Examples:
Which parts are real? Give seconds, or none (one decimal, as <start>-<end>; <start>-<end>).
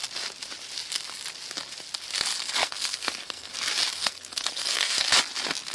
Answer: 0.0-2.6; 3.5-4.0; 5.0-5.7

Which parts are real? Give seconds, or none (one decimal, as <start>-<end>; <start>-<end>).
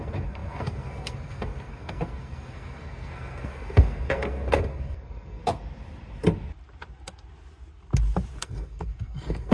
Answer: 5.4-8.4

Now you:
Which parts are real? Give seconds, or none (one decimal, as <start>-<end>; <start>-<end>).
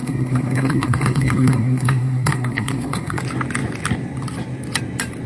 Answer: 3.2-5.3